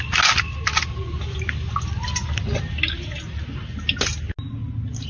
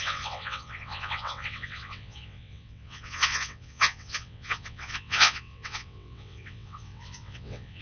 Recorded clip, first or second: first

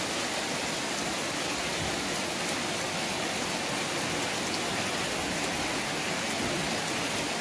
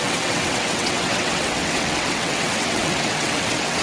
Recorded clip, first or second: first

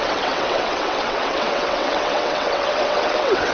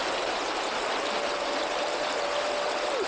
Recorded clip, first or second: second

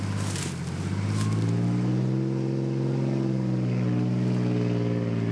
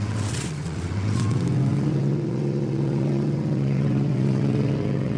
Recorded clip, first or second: first